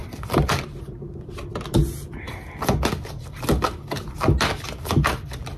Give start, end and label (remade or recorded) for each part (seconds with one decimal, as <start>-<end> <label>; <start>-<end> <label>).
0.0-0.9 remade; 0.9-5.6 recorded